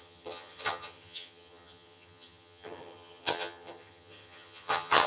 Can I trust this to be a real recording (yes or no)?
no